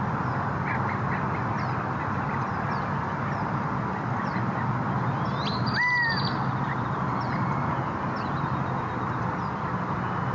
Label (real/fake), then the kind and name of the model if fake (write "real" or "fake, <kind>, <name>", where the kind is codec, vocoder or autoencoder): real